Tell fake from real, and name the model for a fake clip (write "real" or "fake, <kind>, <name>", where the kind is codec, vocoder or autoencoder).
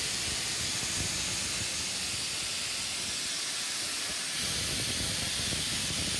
real